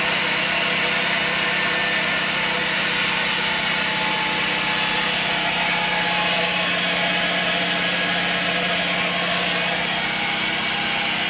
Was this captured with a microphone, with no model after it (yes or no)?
yes